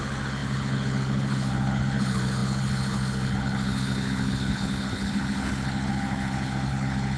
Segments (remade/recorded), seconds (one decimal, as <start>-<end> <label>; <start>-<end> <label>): 0.0-7.2 remade